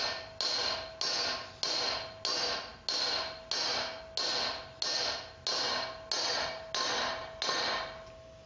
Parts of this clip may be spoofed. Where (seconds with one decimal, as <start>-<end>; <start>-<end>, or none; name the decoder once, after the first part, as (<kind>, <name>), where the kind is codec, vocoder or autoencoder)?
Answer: none